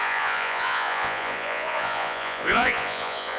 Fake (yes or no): yes